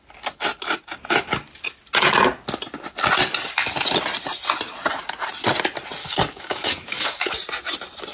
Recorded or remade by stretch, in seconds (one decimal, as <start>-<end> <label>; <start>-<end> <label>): 0.0-6.0 recorded; 6.0-7.3 remade; 7.3-8.1 recorded